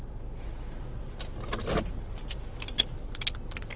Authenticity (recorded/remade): recorded